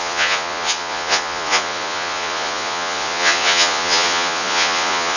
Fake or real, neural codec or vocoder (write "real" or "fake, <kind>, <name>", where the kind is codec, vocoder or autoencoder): fake, vocoder, Vocos